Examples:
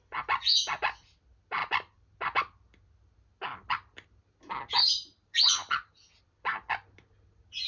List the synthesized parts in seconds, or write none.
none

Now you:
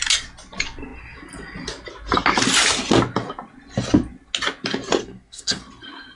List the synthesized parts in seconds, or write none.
5.0-5.6 (codec, SNAC)

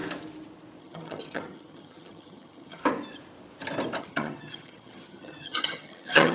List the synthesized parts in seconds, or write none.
0.8-2.8 (vocoder, HiFi-GAN); 4.0-6.3

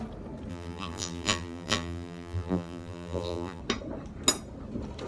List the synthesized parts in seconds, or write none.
0.5-3.6 (vocoder, BigVGAN v2)

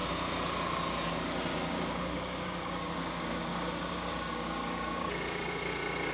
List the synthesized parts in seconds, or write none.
1.5-5.2 (codec, DAC)

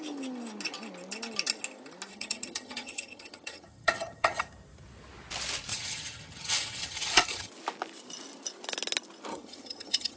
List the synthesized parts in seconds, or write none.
2.1-4.5 (vocoder, HiFi-GAN); 5.7-7.5; 9.3-10.2